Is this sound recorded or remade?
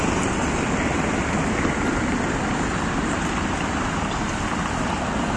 recorded